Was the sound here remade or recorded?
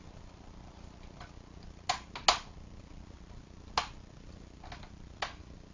recorded